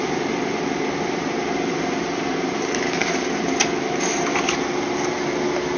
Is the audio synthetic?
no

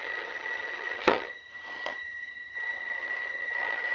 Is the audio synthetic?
yes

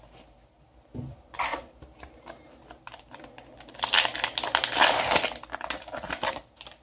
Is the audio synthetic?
no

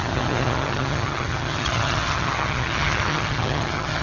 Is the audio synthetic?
yes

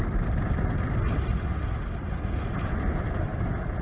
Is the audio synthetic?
no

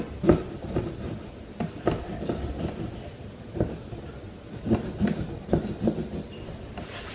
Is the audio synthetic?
no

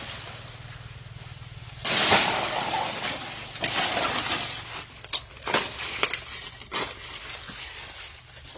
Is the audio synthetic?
no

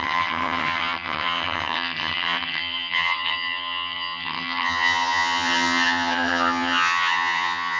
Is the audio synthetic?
yes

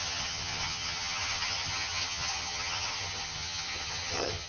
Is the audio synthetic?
yes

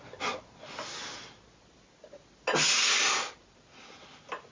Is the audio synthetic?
no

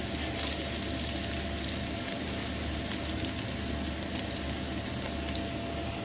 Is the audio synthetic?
no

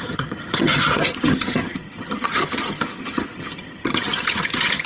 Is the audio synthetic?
yes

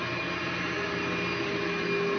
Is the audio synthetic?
no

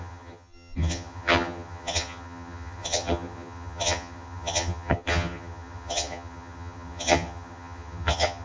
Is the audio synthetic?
yes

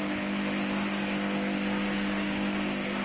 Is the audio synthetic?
no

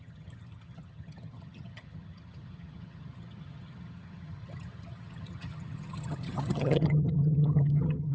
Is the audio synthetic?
yes